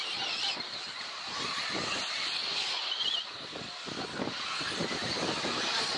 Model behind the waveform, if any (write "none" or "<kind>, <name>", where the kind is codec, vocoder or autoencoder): none